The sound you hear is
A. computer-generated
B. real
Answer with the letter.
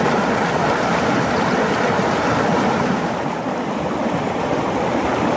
B